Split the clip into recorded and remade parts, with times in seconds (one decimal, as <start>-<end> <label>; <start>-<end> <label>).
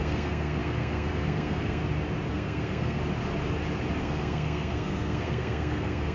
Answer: 0.0-1.8 remade; 1.8-2.3 recorded; 2.3-3.0 remade; 3.0-4.0 recorded; 4.0-6.1 remade